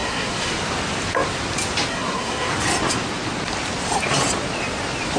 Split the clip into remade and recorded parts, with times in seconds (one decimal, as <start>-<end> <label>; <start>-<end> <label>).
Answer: 0.0-0.5 remade; 0.5-1.9 recorded; 1.9-2.5 remade; 2.5-5.2 recorded